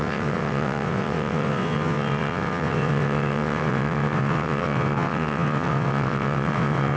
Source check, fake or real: fake